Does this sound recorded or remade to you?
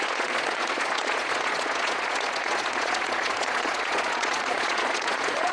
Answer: remade